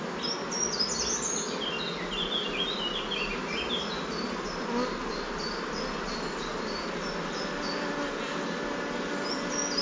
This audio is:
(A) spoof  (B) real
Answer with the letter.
B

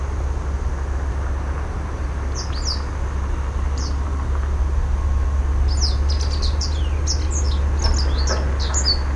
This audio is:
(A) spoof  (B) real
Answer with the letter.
B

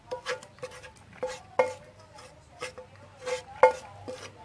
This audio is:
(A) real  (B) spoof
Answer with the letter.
A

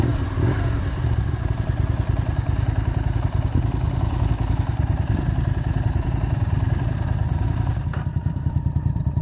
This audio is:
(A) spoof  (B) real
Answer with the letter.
A